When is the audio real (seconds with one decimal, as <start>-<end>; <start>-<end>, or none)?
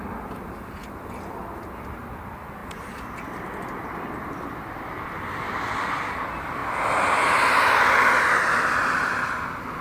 0.8-1.8; 6.6-7.8